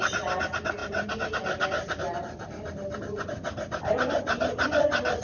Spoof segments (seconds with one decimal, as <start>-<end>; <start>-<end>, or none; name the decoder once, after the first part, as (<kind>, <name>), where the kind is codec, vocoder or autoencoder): none